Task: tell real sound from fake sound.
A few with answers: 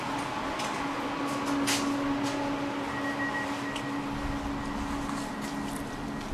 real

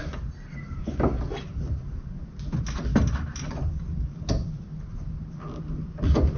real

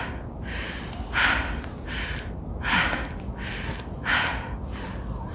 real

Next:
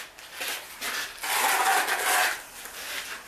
real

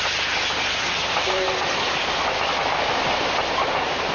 fake